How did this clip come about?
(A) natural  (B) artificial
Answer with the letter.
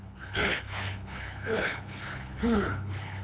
B